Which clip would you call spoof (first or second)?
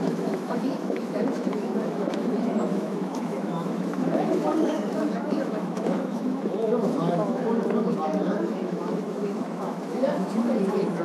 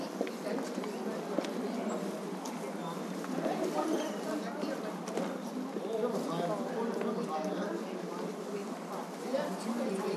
first